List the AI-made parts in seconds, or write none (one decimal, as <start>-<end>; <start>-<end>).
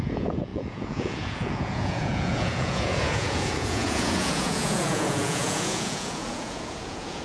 0.0-7.2